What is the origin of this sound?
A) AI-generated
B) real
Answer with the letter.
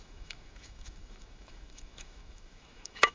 A